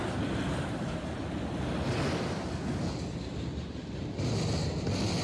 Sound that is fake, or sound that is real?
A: real